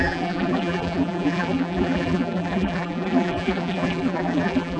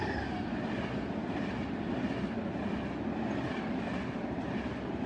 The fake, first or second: first